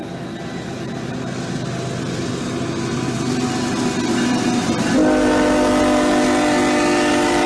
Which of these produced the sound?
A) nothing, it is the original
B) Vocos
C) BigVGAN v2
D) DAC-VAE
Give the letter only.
A